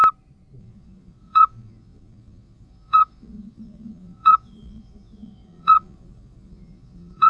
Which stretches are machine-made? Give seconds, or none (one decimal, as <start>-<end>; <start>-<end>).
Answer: 0.6-7.3